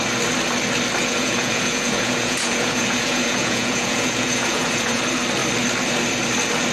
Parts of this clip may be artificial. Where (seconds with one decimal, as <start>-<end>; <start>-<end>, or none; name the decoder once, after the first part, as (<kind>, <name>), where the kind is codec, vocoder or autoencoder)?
1.0-5.0 (vocoder, Vocos)